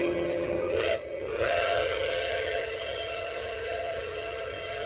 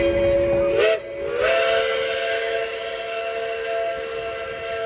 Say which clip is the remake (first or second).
first